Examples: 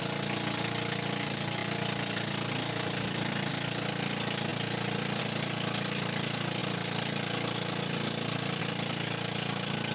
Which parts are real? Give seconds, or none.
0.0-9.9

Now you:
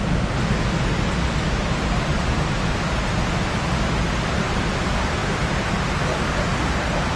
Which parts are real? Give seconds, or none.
0.0-7.2

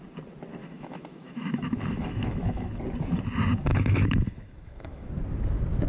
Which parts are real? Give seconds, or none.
0.0-0.6; 2.7-3.7; 5.1-5.9

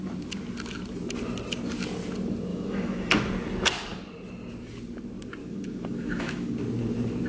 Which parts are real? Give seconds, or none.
0.0-2.5; 3.3-5.4; 6.5-7.3

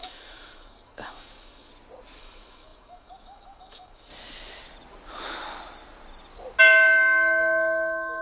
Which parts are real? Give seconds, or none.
1.7-2.2; 4.1-6.6

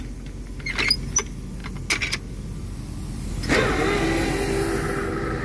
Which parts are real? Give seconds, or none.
0.0-5.4

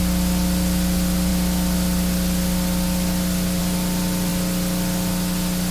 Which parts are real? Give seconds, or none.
0.0-5.7

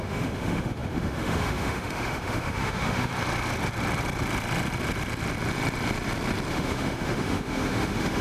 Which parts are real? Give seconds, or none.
3.1-6.5